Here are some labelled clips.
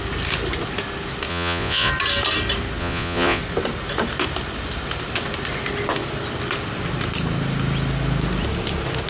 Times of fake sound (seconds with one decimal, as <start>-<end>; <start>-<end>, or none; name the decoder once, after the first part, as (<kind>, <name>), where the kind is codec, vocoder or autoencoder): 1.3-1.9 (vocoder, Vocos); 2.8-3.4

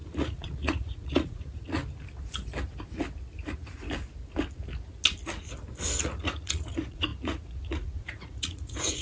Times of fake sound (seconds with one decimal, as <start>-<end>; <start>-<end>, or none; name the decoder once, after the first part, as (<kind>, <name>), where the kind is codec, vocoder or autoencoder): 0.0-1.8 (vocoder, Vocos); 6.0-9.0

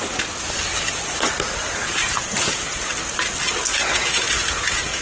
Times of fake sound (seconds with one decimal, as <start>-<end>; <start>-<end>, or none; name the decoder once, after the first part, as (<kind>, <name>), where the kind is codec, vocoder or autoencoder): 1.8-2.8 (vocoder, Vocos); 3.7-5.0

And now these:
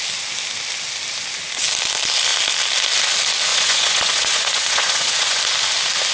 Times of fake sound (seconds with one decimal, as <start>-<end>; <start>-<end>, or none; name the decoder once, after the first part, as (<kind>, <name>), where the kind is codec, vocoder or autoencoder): 3.5-5.4 (vocoder, Vocos)

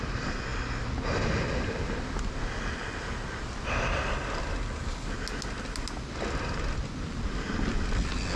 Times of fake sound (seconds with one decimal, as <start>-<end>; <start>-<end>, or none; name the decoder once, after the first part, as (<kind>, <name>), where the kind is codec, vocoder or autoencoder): none

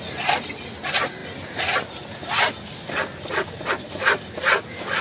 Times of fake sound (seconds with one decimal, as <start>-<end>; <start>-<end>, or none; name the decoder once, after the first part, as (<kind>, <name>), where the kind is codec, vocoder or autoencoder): none

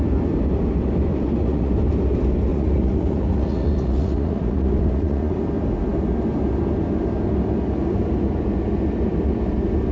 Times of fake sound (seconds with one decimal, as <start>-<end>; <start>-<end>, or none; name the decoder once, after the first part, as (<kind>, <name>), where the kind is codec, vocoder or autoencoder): 1.1-1.7 (vocoder, Vocos); 2.5-5.4